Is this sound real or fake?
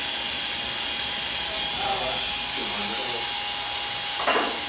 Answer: real